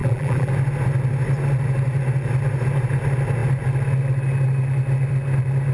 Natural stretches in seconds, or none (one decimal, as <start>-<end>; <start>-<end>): 0.5-5.7